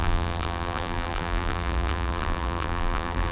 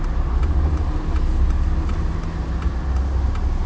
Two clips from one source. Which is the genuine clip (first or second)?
second